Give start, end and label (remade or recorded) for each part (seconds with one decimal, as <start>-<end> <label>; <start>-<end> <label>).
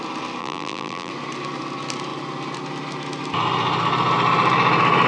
0.0-0.4 recorded; 0.4-1.1 remade; 1.1-5.1 recorded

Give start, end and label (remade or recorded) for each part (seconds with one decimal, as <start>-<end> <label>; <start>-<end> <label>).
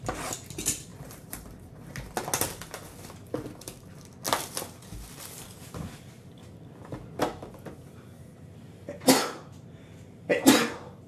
0.0-0.9 recorded; 0.9-1.9 remade; 1.9-11.1 recorded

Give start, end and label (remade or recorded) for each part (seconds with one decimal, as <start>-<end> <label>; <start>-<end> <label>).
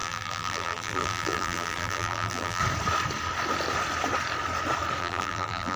0.0-2.6 remade; 2.6-5.0 recorded; 5.0-5.8 remade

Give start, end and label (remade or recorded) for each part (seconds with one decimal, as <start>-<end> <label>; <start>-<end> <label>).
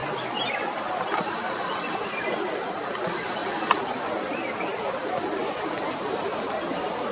0.0-7.1 remade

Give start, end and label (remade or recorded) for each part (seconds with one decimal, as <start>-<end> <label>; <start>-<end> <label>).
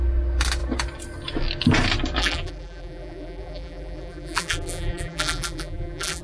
0.0-2.2 recorded; 2.2-6.2 remade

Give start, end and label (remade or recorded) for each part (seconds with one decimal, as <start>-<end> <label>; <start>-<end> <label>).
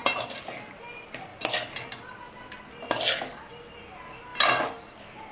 0.0-0.8 remade; 0.8-5.3 recorded